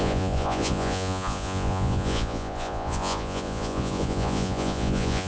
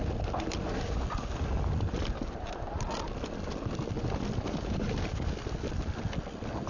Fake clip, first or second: first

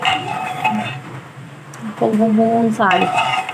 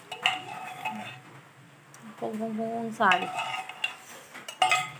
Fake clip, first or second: first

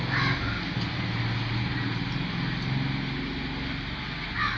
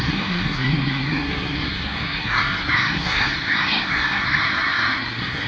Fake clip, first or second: second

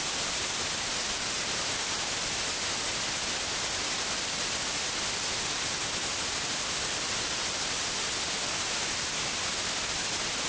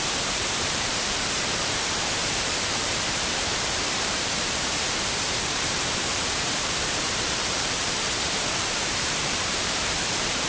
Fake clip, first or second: second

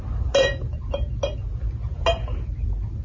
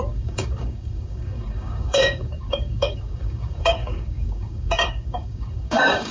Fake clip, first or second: second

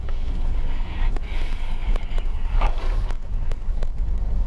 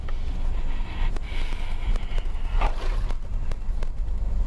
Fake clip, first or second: first